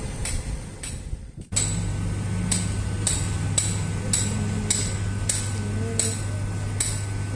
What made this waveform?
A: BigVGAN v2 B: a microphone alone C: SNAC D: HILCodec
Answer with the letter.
B